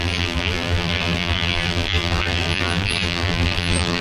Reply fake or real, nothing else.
fake